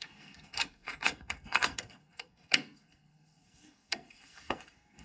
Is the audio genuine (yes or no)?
no